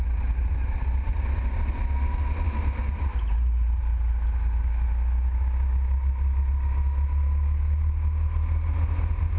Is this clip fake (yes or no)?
no